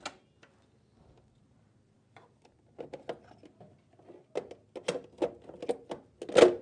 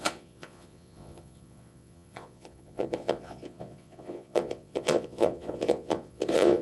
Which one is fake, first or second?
second